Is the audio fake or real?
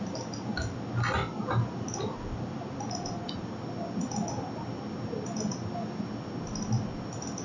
real